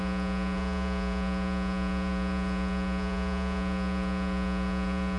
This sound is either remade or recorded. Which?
remade